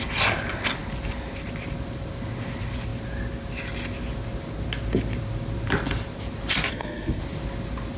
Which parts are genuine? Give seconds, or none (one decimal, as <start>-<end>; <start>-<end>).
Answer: 0.0-6.7; 7.2-8.0